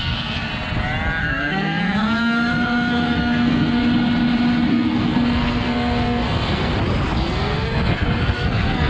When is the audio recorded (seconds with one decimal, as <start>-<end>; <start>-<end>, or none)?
0.5-1.2; 3.8-4.7; 6.7-7.2